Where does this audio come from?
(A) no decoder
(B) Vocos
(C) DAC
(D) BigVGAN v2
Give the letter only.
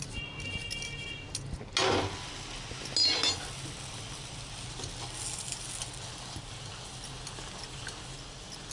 A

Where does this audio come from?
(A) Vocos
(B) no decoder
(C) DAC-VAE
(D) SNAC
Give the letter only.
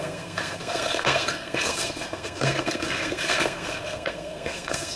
D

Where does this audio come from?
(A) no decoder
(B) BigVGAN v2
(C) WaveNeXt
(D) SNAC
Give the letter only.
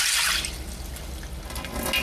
A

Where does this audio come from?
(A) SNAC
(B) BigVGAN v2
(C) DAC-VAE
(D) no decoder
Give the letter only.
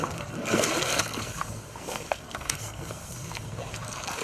A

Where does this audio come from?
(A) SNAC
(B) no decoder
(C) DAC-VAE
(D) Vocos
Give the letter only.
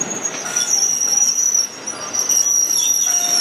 B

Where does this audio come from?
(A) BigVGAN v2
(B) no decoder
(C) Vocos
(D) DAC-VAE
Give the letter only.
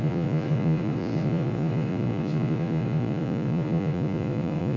C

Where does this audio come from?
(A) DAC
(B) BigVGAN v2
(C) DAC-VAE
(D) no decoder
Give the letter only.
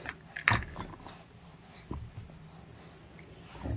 D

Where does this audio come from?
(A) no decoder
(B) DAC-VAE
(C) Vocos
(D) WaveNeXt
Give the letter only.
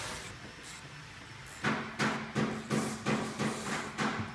A